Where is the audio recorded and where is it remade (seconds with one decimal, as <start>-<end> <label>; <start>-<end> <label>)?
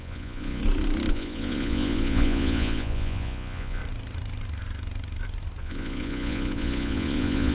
0.0-0.6 remade; 0.6-1.1 recorded; 1.1-3.8 remade; 3.8-5.6 recorded; 5.6-7.5 remade